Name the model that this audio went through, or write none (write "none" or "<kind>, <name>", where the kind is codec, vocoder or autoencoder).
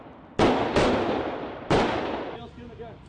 none